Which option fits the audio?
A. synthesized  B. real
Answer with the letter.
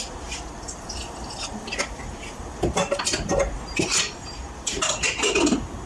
B